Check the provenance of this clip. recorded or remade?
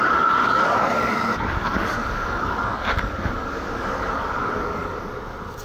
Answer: remade